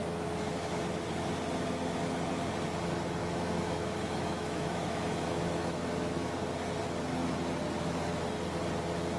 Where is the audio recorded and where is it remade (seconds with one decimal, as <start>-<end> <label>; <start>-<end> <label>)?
0.0-0.7 remade; 0.7-3.2 recorded; 3.2-6.3 remade; 6.3-9.2 recorded